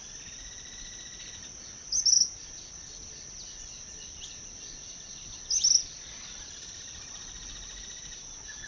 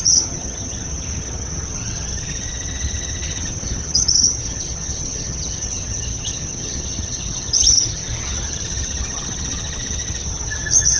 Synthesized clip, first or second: second